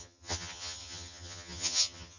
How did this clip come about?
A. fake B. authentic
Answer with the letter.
A